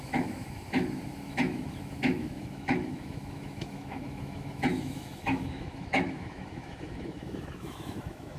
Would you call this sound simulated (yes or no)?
yes